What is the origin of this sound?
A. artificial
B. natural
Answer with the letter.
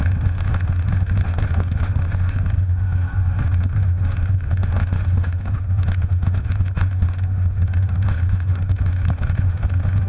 A